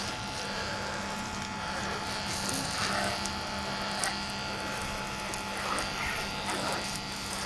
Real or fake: real